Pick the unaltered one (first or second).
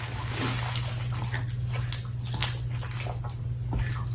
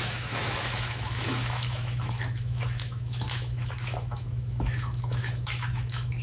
first